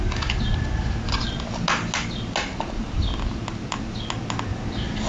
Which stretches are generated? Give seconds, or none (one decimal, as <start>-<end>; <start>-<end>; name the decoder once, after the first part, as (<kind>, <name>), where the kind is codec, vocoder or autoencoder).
none